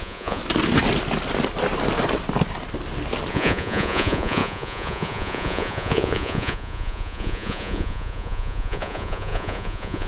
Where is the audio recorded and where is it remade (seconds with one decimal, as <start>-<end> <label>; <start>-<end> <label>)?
0.0-0.4 remade; 0.4-3.3 recorded; 3.3-10.1 remade